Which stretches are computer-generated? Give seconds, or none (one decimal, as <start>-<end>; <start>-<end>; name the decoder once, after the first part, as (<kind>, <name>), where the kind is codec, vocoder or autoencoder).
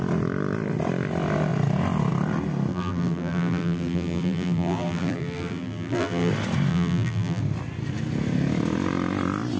2.7-6.3 (vocoder, BigVGAN v2); 6.7-7.4